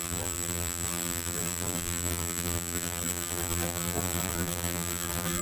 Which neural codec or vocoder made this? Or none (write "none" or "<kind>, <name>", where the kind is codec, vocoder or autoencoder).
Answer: vocoder, BigVGAN v2